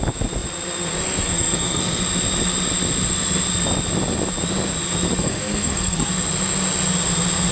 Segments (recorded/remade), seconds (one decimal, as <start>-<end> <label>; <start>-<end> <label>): 0.0-1.3 recorded; 1.3-2.0 remade; 2.0-5.2 recorded; 5.2-6.1 remade; 6.1-7.5 recorded